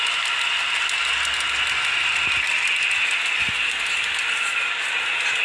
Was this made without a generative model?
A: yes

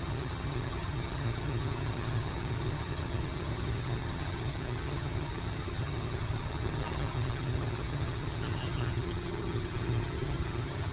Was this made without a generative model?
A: no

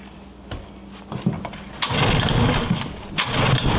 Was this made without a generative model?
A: yes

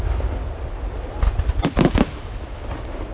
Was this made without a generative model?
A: yes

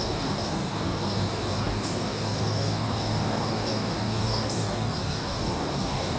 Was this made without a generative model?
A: no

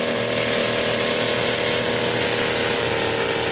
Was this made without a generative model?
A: yes